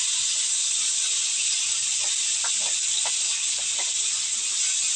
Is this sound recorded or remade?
recorded